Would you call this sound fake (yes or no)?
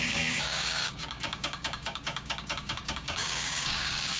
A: yes